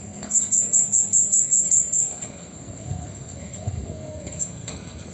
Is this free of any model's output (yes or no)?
no